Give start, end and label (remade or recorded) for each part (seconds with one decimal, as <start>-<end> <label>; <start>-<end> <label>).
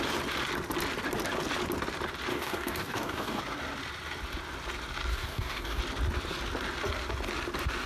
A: 0.0-2.3 recorded; 2.3-3.4 remade; 3.4-5.1 recorded; 5.1-5.8 remade; 5.8-7.9 recorded